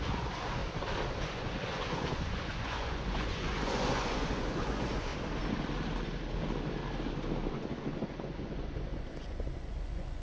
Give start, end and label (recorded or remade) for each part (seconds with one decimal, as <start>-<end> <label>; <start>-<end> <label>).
0.0-0.6 remade; 0.6-1.2 recorded; 1.2-5.1 remade; 5.1-7.5 recorded; 7.5-10.2 remade